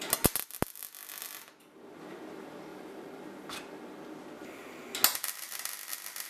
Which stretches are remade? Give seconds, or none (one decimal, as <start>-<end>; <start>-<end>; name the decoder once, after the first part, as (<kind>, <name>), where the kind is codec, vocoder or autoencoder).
2.7-3.2 (vocoder, BigVGAN v2)